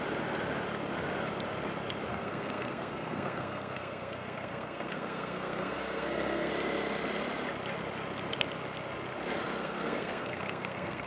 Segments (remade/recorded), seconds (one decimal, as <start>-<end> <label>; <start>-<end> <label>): 0.0-2.1 recorded; 2.1-6.5 remade; 6.5-9.6 recorded; 9.6-11.1 remade